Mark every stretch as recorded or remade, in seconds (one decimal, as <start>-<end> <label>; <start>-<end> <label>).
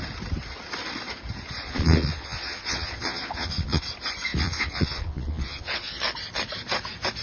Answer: 0.0-1.6 recorded; 1.6-3.8 remade; 3.8-4.3 recorded; 4.3-6.0 remade; 6.0-7.2 recorded